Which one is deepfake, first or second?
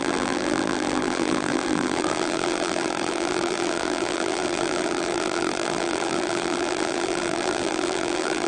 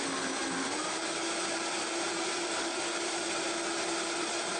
first